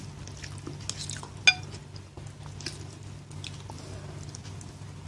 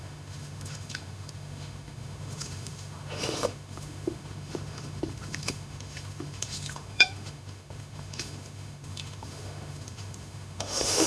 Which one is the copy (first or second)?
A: second